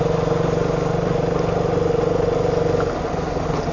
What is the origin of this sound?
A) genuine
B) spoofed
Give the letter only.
A